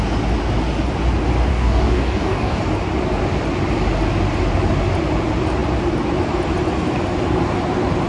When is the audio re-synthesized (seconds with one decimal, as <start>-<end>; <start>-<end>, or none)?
1.5-2.6